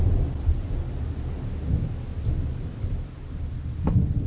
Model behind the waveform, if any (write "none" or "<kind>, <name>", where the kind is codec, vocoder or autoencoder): none